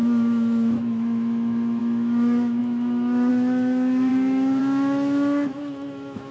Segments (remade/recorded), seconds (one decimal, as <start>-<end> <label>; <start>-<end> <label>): 0.0-6.3 remade